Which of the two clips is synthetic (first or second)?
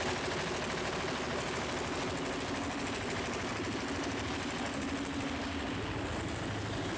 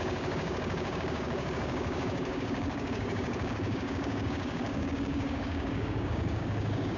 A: second